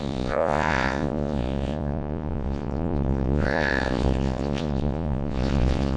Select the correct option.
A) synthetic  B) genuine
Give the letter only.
A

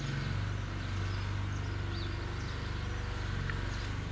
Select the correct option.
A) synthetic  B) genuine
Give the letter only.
B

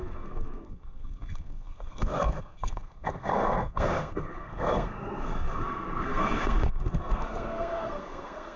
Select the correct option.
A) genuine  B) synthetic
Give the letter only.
B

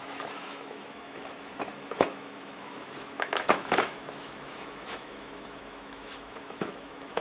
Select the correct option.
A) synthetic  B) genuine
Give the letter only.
A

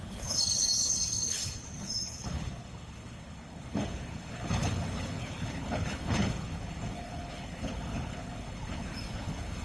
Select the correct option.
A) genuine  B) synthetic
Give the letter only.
B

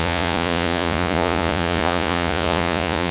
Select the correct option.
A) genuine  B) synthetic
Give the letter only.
B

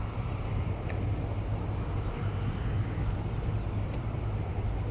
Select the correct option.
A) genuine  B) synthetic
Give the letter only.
A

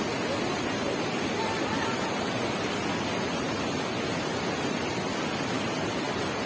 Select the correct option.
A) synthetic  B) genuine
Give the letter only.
B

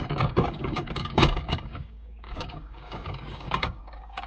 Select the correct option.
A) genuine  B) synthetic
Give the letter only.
B